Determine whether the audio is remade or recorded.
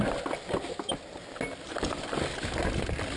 recorded